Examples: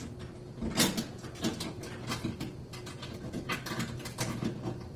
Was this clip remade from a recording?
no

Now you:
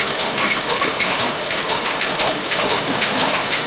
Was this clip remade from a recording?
yes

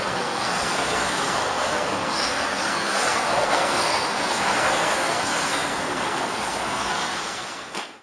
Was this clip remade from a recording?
yes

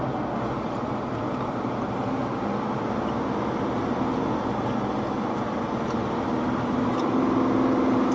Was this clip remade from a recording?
no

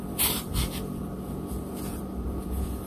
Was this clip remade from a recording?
yes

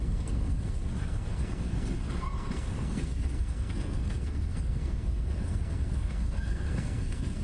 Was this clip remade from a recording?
yes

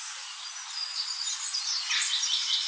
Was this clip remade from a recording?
no